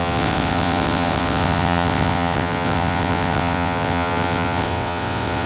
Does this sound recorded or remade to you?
remade